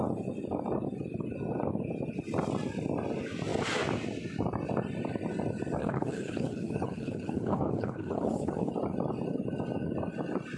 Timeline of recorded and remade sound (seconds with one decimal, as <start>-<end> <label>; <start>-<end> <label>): 0.0-5.8 recorded; 5.8-8.7 remade; 8.7-10.6 recorded